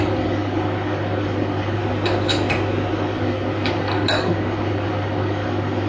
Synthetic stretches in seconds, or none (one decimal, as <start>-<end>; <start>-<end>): 0.0-1.8; 2.9-5.9

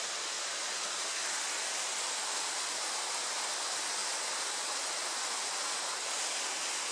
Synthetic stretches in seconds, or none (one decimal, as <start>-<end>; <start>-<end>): none